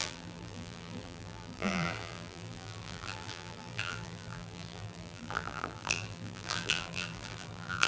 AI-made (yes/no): yes